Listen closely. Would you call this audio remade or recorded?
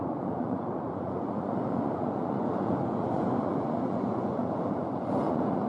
remade